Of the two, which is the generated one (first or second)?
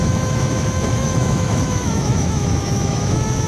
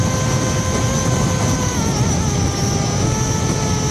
first